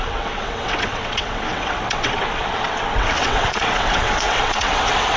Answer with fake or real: fake